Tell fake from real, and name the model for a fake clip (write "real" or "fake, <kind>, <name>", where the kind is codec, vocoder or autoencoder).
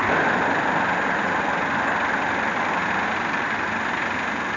real